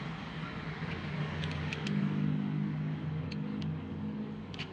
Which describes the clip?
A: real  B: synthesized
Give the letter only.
B